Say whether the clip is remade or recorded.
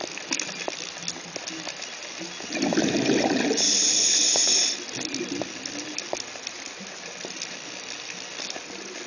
recorded